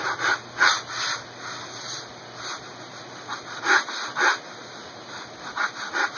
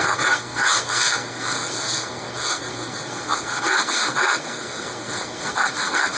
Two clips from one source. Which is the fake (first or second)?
second